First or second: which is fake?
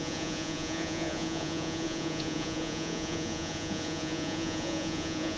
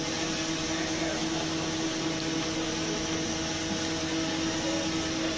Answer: first